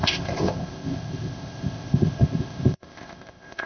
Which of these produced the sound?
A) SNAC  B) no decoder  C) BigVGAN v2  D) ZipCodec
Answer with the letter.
D